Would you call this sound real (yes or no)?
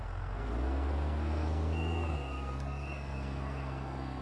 no